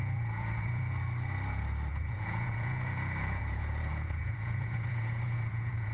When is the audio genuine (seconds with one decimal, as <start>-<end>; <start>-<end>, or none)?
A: 1.0-1.9